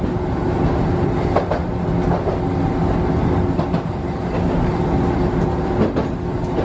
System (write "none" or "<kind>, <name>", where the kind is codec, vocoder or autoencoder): none